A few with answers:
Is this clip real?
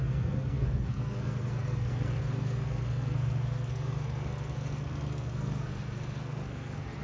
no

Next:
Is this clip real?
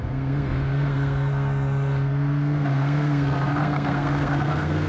no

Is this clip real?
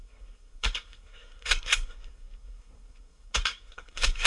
no